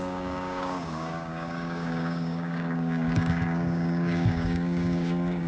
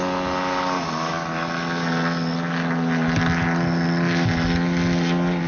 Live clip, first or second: second